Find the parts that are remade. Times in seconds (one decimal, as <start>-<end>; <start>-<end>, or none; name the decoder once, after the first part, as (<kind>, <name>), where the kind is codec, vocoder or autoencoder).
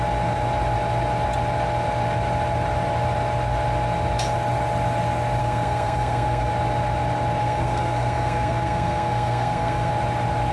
5.4-6.5 (codec, SNAC); 7.4-9.9